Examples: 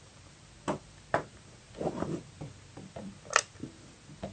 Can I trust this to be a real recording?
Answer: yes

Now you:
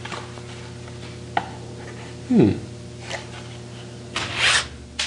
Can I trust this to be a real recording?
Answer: yes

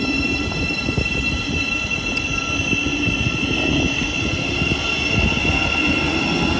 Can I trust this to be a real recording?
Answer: yes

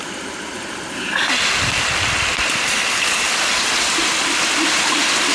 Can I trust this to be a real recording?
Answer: no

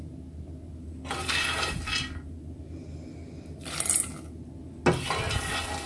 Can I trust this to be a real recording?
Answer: yes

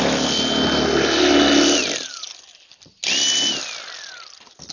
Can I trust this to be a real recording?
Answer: yes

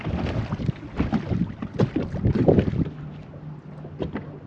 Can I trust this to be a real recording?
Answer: yes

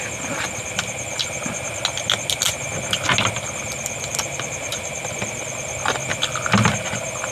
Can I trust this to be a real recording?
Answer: yes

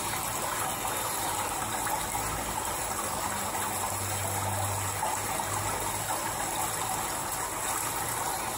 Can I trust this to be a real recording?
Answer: yes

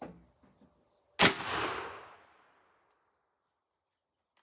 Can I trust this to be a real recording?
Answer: yes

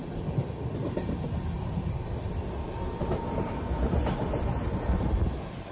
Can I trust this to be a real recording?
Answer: yes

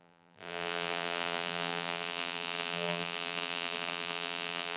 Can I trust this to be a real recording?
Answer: no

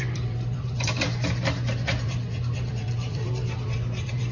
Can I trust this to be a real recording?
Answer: no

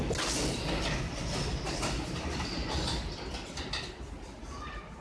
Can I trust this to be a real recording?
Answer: yes